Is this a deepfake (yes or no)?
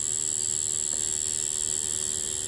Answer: no